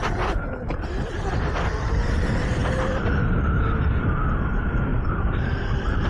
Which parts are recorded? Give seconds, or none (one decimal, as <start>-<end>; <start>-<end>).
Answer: 0.0-4.9